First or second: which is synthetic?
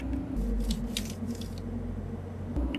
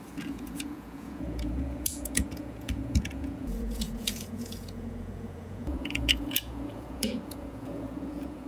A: second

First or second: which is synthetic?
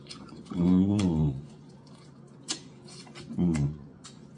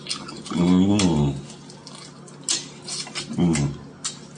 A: first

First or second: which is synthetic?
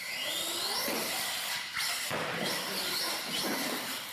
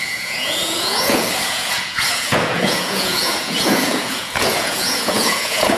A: second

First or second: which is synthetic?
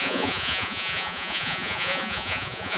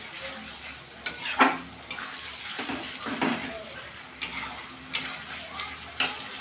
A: first